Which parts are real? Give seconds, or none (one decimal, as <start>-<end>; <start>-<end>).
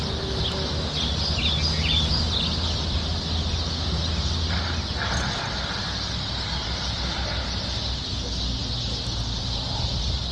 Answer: 0.0-10.3